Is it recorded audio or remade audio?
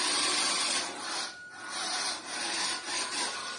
recorded